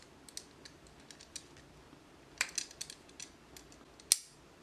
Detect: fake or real real